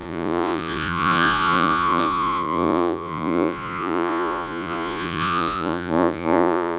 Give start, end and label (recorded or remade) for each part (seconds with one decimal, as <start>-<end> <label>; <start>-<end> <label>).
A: 0.0-6.8 remade